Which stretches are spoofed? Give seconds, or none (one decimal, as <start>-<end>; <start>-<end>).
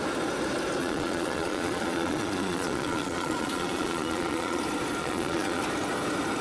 0.8-4.6; 5.0-5.6